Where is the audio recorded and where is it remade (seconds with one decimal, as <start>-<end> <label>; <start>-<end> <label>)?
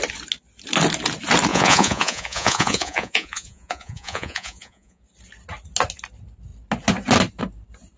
0.0-1.5 recorded; 1.5-5.0 remade; 5.0-8.0 recorded